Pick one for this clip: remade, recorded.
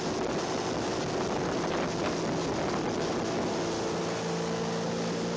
recorded